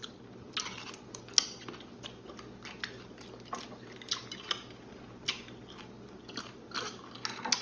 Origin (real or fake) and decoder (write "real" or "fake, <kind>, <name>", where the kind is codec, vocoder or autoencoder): real